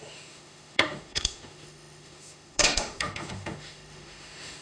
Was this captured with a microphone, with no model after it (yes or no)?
no